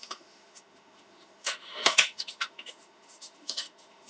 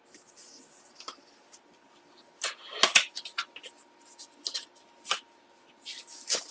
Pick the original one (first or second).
second